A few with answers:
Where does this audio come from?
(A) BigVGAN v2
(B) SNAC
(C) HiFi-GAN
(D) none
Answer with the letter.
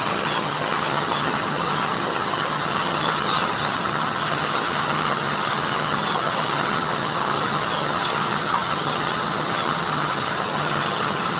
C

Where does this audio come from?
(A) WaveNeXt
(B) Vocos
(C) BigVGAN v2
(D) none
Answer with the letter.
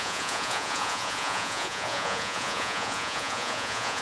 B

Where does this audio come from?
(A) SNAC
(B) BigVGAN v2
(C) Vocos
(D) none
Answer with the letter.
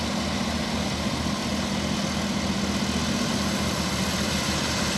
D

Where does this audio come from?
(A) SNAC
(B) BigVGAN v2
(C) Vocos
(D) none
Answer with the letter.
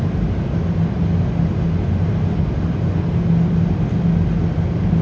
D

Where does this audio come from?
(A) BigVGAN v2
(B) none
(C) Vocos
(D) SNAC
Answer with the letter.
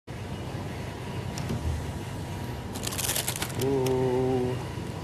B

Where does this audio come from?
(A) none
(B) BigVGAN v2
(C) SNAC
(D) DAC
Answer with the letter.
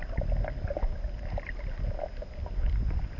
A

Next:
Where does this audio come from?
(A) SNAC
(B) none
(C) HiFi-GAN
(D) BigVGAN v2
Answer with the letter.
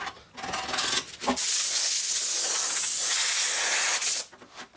B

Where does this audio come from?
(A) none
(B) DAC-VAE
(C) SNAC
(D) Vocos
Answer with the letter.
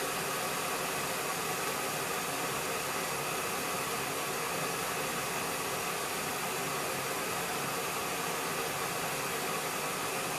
A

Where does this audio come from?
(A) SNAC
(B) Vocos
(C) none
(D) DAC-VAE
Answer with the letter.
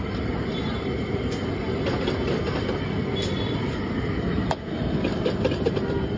C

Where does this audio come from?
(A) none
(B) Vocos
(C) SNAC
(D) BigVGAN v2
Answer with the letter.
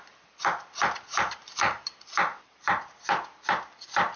A